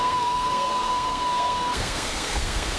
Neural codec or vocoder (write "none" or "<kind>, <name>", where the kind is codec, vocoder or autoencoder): codec, SNAC